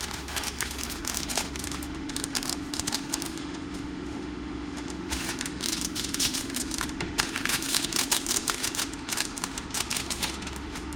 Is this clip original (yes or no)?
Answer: no